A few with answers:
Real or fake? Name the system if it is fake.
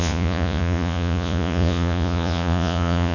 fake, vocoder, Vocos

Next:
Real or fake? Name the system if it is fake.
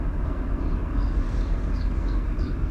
fake, codec, SNAC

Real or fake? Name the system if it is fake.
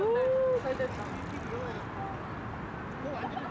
real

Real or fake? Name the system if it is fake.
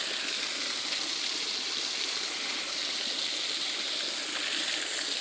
real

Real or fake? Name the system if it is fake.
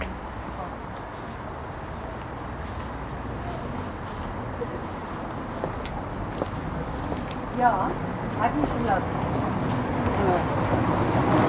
real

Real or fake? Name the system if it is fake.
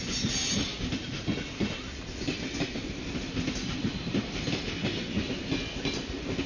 real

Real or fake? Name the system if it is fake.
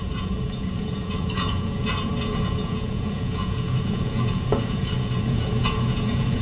fake, vocoder, Vocos